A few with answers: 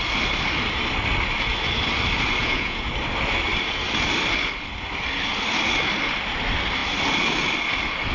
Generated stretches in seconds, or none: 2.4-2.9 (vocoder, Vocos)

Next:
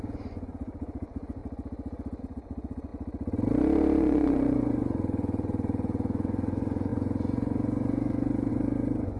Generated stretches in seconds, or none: 0.0-1.4 (vocoder, Vocos); 2.2-2.9; 4.0-9.2